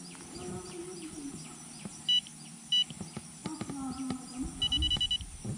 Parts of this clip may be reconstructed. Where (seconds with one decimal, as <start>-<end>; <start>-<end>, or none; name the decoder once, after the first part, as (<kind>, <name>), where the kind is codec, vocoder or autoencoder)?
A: none